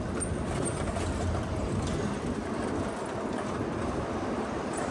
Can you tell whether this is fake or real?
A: real